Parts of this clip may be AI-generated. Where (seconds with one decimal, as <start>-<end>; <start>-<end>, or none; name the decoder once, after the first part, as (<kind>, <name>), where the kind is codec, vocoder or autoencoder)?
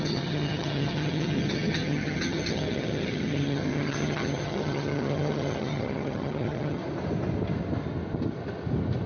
0.0-6.8 (vocoder, HiFi-GAN)